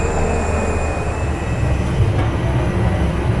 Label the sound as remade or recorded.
recorded